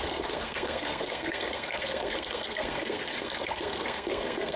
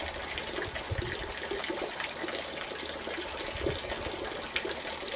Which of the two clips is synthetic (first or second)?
first